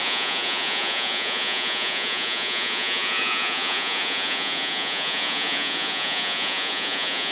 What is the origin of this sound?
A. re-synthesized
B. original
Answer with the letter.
A